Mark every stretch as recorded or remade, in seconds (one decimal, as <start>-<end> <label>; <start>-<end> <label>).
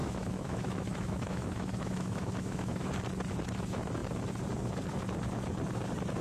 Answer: 0.0-2.9 remade; 2.9-6.2 recorded